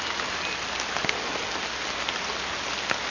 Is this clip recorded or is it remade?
recorded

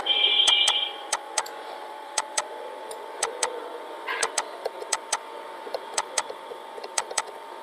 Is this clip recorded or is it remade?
remade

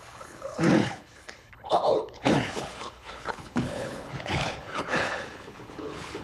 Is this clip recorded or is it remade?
remade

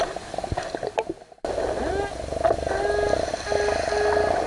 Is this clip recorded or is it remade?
recorded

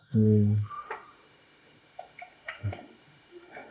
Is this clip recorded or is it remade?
remade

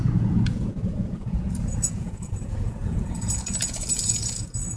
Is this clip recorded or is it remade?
remade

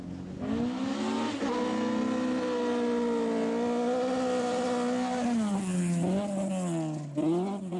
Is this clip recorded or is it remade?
recorded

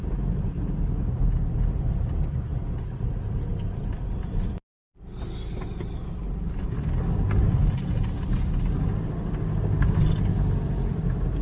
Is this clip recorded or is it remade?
recorded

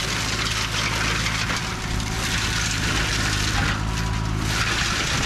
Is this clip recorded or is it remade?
recorded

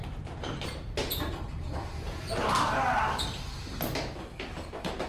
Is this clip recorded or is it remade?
recorded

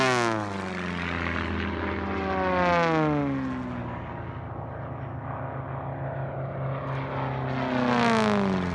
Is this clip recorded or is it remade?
recorded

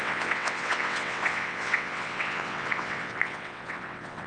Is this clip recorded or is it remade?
remade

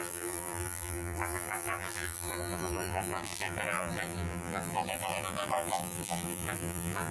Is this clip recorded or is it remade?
remade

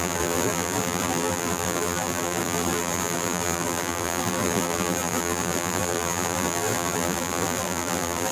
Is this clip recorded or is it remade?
remade